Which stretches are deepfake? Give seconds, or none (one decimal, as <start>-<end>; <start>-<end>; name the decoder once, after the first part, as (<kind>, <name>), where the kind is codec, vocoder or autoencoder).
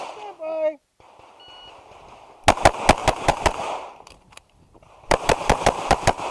3.0-6.3 (vocoder, BigVGAN v2)